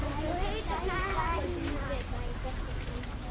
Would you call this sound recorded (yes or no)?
yes